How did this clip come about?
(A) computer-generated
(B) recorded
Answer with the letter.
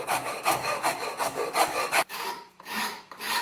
A